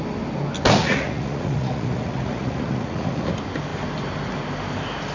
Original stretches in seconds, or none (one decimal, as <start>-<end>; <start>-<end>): 0.0-0.8; 3.3-5.1